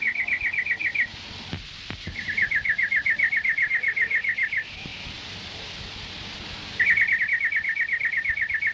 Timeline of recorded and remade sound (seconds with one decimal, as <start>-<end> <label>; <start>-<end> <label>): 0.0-0.8 recorded; 0.8-3.7 remade; 3.7-4.9 recorded; 4.9-7.2 remade; 7.2-8.7 recorded